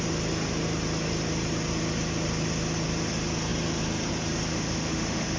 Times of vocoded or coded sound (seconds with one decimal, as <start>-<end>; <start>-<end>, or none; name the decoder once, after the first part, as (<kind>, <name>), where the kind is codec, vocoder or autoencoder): 4.5-5.4 (autoencoder, DAC-VAE)